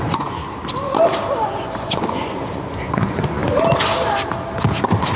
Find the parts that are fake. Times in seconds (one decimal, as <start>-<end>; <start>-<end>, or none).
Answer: 0.0-0.4; 1.4-3.4